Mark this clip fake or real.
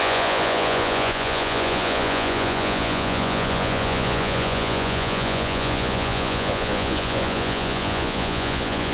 fake